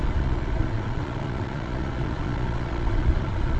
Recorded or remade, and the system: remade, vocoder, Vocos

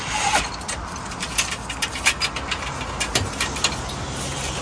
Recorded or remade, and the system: recorded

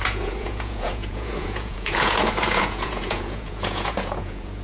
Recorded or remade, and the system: remade, vocoder, Vocos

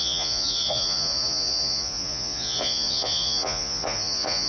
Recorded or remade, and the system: remade, vocoder, Vocos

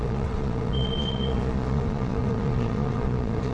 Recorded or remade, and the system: remade, vocoder, Vocos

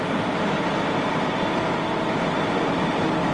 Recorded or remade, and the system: recorded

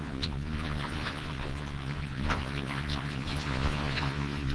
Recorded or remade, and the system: remade, vocoder, Vocos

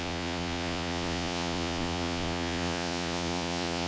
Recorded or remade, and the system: remade, vocoder, Vocos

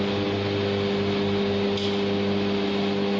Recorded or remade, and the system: recorded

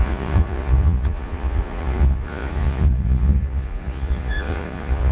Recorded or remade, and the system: remade, vocoder, Vocos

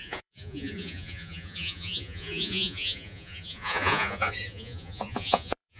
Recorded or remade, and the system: remade, vocoder, Vocos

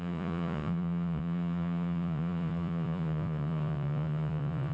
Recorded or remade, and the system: remade, vocoder, Vocos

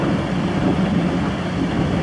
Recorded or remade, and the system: recorded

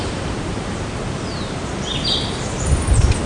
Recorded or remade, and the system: recorded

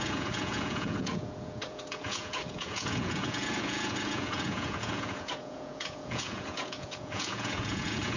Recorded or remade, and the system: remade, vocoder, Vocos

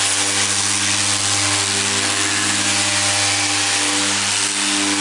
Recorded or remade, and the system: recorded